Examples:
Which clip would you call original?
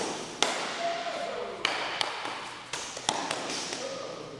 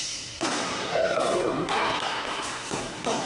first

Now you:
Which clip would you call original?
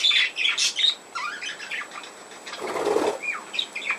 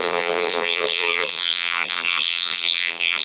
first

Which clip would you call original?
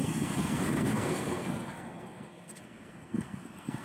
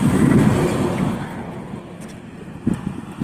second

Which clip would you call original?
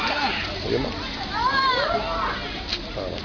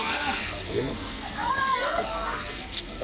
first